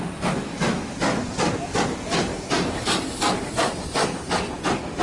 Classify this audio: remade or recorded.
recorded